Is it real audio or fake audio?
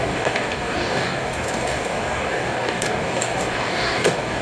fake